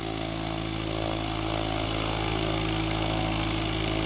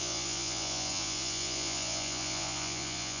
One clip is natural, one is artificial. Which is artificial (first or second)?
second